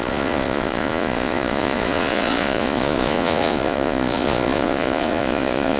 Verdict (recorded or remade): remade